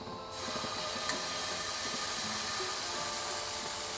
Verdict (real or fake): real